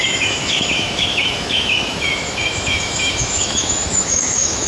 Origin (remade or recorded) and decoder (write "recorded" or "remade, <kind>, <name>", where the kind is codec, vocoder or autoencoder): remade, autoencoder, DAC-VAE